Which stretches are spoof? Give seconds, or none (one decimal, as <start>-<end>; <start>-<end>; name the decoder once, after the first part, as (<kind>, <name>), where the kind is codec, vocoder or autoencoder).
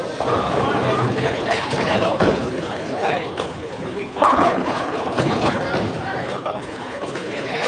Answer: 1.0-5.6 (codec, HILCodec); 6.2-7.7